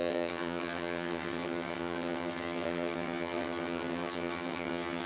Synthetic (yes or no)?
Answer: yes